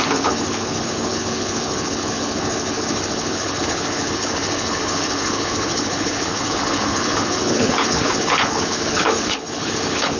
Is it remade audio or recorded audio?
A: remade